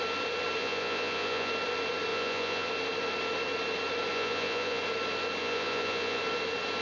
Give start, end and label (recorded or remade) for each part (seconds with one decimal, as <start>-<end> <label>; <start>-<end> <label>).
0.0-0.6 recorded; 0.6-1.5 remade; 1.5-2.1 recorded; 2.1-2.7 remade; 2.7-4.1 recorded; 4.1-4.8 remade; 4.8-5.4 recorded; 5.4-6.2 remade; 6.2-6.8 recorded

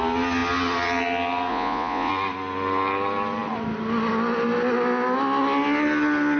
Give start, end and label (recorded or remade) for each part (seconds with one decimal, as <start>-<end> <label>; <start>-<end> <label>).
0.0-1.5 recorded; 1.5-2.1 remade; 2.1-6.4 recorded

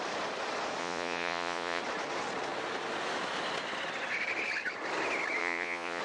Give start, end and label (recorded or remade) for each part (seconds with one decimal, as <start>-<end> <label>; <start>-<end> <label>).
0.0-0.8 recorded; 0.8-1.8 remade; 1.8-5.4 recorded; 5.4-6.0 remade

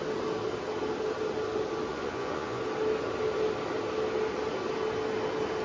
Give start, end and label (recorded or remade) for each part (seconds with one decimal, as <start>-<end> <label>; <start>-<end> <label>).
0.0-1.9 recorded; 1.9-2.6 remade; 2.6-5.6 recorded

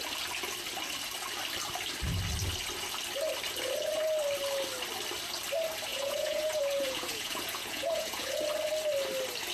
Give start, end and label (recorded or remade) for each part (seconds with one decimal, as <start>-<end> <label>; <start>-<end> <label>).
0.0-5.9 recorded; 5.9-8.4 remade; 8.4-9.5 recorded

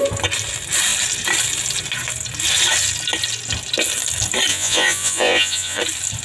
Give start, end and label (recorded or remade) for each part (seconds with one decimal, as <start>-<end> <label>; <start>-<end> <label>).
0.0-4.5 recorded; 4.5-5.8 remade; 5.8-6.2 recorded

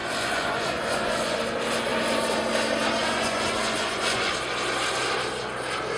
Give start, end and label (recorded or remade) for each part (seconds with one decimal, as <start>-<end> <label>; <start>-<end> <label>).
0.0-1.4 remade; 1.4-3.0 recorded; 3.0-4.3 remade; 4.3-6.0 recorded